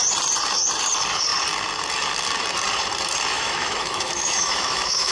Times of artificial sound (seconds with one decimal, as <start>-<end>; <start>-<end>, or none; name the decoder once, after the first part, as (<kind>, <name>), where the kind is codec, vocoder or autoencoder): 3.3-5.1 (autoencoder, DAC-VAE)